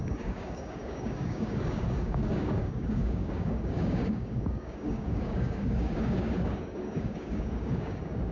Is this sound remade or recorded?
remade